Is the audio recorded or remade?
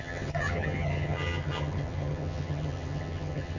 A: remade